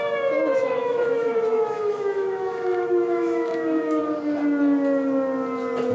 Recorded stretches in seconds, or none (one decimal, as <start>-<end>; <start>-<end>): 0.0-0.5; 4.0-5.9